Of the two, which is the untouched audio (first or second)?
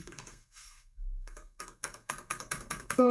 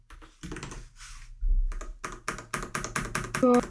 second